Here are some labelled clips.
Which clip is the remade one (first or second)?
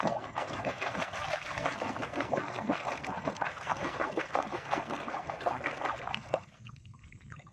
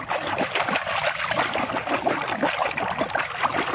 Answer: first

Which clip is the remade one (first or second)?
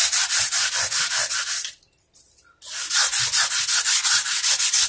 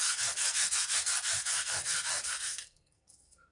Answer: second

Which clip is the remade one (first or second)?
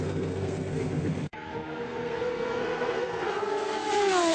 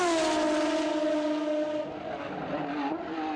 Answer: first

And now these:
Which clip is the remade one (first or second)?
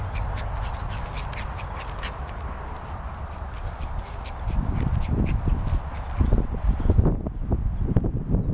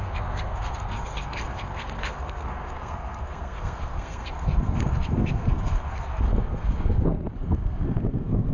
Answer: second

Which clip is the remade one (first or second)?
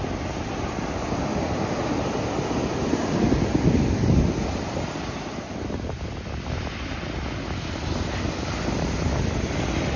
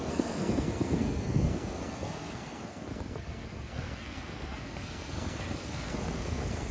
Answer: second